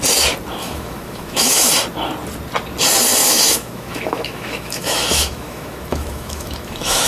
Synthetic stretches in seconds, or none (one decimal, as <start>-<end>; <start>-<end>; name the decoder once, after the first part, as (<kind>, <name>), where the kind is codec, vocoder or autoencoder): 0.6-1.7 (autoencoder, DAC-VAE); 3.2-7.1